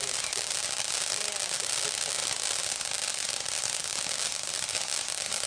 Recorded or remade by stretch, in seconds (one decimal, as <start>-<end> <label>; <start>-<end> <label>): 0.0-5.5 recorded